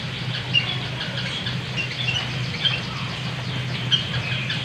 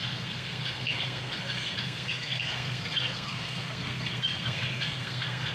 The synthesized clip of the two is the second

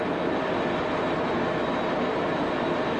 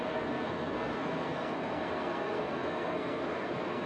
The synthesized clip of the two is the second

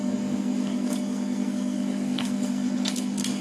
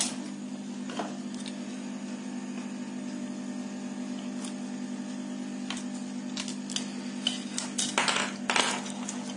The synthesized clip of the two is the first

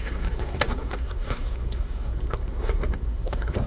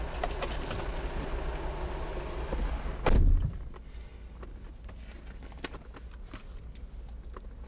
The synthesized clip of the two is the first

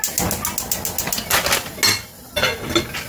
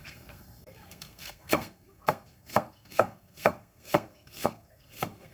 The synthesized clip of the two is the second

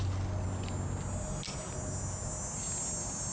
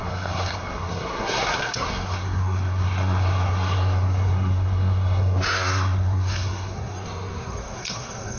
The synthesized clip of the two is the second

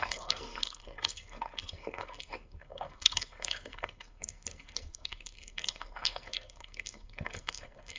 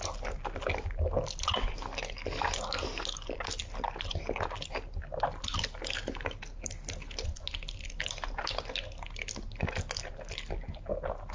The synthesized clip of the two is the first